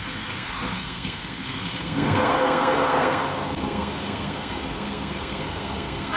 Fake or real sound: fake